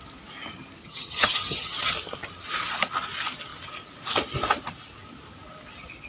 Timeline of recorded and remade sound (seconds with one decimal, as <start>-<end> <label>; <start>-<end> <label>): 0.0-0.8 recorded; 0.8-1.9 remade; 1.9-6.1 recorded